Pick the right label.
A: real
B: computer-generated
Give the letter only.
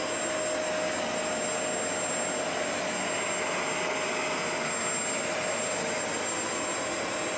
A